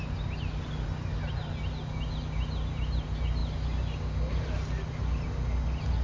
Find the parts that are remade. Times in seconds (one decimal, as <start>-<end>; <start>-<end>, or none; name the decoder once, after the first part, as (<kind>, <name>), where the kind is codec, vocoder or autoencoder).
none